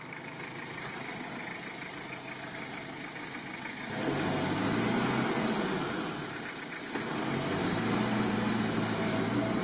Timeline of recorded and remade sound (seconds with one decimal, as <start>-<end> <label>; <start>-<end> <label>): 0.0-7.6 recorded; 7.6-9.6 remade